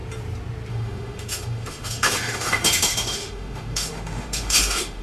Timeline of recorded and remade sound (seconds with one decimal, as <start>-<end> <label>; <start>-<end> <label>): 0.0-0.7 recorded; 0.7-5.0 remade